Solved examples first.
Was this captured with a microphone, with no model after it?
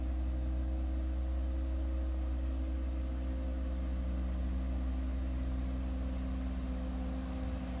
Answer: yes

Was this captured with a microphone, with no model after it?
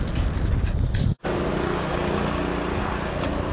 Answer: yes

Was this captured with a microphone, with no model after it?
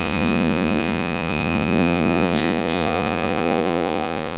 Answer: no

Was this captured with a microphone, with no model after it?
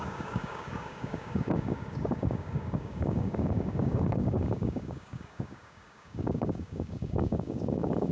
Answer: no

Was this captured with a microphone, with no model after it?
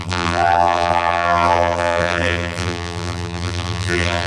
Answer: no